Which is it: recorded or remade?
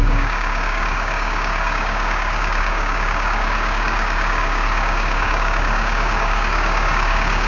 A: remade